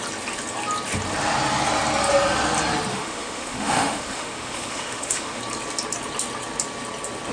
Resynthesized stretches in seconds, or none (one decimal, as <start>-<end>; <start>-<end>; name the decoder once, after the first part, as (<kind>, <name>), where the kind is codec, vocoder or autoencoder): 2.9-5.4 (autoencoder, DAC-VAE)